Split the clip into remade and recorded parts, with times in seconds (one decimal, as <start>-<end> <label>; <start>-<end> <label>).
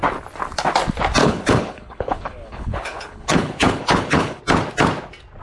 0.0-1.2 recorded; 1.2-4.4 remade; 4.4-5.4 recorded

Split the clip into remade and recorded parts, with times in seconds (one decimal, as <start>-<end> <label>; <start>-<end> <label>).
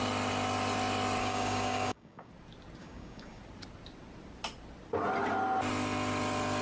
0.0-1.2 recorded; 1.2-2.3 remade; 2.3-2.8 recorded; 2.8-3.4 remade; 3.4-6.6 recorded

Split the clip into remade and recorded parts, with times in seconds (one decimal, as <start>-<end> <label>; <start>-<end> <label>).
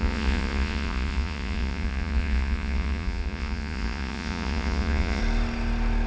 0.0-5.2 remade; 5.2-6.1 recorded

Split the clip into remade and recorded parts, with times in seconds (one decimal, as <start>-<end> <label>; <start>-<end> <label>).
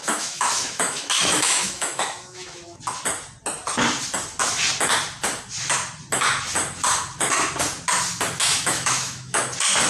0.0-2.8 remade; 2.8-8.4 recorded; 8.4-9.4 remade; 9.4-9.9 recorded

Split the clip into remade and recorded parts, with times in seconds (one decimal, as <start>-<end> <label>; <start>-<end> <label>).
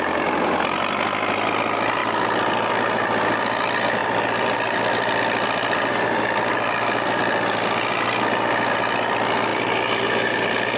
0.0-2.0 recorded; 2.0-2.7 remade; 2.7-4.0 recorded; 4.0-7.2 remade; 7.2-10.8 recorded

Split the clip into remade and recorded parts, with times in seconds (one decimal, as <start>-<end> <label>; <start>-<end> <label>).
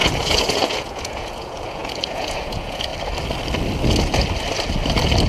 0.0-2.9 remade; 2.9-5.3 recorded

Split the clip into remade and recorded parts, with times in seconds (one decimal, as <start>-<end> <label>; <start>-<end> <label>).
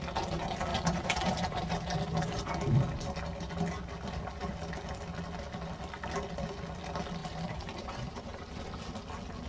0.0-0.7 recorded; 0.7-2.5 remade; 2.5-7.2 recorded; 7.2-8.7 remade; 8.7-9.5 recorded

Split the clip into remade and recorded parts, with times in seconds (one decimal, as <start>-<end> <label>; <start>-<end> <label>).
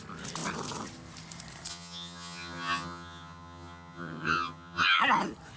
0.0-1.7 recorded; 1.7-5.0 remade; 5.0-5.6 recorded